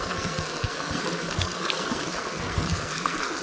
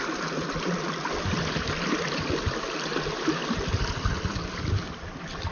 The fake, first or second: first